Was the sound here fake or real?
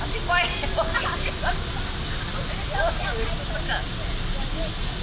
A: real